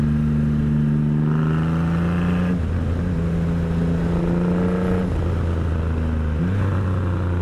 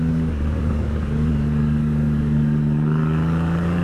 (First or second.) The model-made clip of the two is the second